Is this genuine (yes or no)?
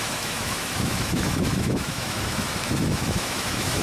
no